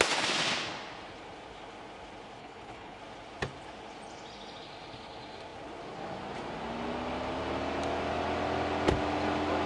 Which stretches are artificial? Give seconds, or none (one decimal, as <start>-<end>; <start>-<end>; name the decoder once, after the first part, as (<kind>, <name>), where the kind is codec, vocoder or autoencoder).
2.4-3.0 (codec, HILCodec)